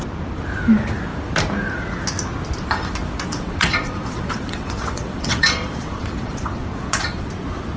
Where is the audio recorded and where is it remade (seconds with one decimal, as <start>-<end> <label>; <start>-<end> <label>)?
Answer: 0.0-3.3 recorded; 3.3-7.3 remade; 7.3-7.8 recorded